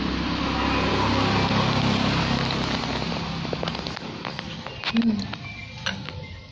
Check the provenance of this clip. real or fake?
real